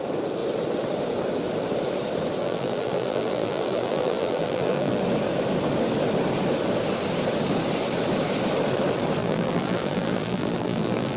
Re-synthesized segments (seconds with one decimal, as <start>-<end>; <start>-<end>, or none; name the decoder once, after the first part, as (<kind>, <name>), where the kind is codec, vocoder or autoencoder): 2.4-5.0 (vocoder, BigVGAN v2); 9.2-11.2